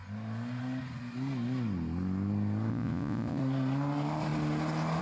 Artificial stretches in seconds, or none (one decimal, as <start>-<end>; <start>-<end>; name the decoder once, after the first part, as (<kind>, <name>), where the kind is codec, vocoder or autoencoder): 2.7-3.4 (vocoder, Vocos)